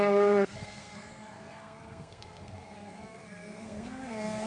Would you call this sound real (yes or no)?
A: no